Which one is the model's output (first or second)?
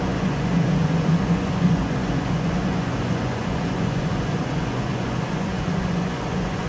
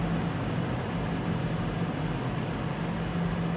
first